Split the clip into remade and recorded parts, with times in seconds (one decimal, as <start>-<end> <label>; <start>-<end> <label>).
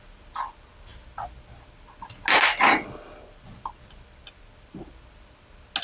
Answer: 0.0-5.8 recorded